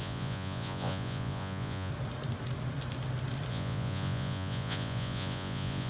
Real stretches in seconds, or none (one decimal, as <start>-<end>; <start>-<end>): 1.9-3.5